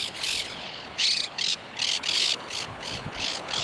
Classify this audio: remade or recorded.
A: remade